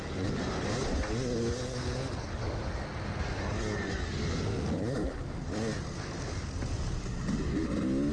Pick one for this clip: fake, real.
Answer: real